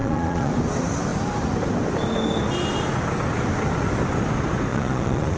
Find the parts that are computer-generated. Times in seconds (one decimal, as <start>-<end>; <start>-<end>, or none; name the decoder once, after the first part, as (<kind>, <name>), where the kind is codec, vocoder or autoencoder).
0.0-0.5 (vocoder, Vocos); 4.7-5.4